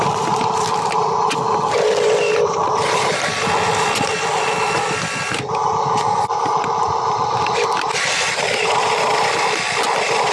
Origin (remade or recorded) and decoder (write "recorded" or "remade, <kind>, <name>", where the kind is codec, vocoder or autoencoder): recorded